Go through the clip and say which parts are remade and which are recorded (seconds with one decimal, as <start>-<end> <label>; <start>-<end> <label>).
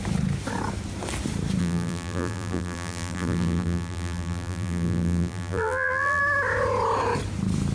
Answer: 0.0-1.6 recorded; 1.6-6.2 remade; 6.2-7.7 recorded